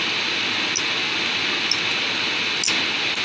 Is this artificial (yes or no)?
no